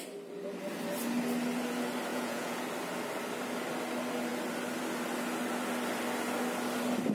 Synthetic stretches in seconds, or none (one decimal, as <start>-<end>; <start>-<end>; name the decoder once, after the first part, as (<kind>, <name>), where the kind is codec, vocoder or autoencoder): 2.1-2.6 (vocoder, Vocos)